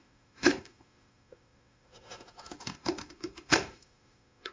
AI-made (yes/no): yes